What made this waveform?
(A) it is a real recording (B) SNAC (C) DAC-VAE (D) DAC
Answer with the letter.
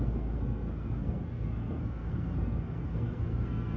B